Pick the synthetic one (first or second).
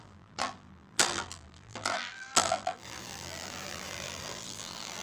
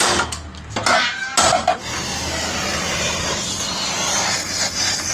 first